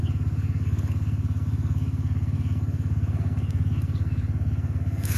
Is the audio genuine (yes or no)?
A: no